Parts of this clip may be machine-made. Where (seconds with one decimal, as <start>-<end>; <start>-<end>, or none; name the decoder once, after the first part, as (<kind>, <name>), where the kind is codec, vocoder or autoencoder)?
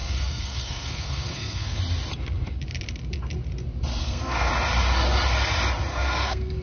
0.0-1.8 (codec, SNAC); 4.0-4.5; 5.9-6.6